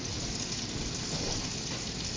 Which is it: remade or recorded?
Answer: recorded